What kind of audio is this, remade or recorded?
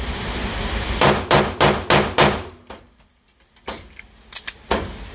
recorded